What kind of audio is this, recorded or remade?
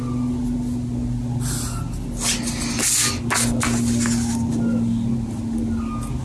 recorded